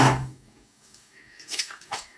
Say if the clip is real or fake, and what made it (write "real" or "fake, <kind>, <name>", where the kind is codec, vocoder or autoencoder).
fake, codec, DAC